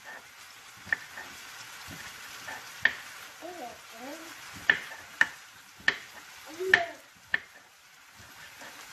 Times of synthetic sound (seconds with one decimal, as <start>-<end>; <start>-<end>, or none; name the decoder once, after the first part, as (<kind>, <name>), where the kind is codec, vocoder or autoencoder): 4.1-5.6 (vocoder, BigVGAN v2); 7.3-8.9

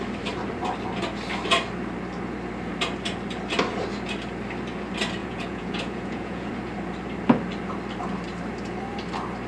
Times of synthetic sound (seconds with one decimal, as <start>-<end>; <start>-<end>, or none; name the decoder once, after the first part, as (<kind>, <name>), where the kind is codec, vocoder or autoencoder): 5.2-6.5 (vocoder, Vocos)

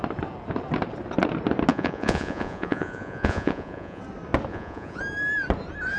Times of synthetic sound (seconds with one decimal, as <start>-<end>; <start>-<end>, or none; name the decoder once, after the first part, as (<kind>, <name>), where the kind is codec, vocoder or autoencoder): 1.7-4.0 (vocoder, Vocos); 4.5-5.0

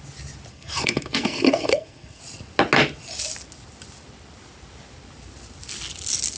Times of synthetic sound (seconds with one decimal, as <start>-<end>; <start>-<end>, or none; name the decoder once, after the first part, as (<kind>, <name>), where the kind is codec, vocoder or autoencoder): 0.5-2.2 (codec, SNAC)